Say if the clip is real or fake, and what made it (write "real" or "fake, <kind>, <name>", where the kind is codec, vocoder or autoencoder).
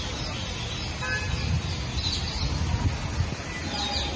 real